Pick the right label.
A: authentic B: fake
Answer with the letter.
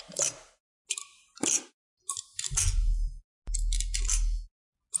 A